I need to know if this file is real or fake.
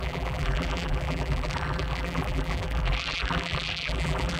fake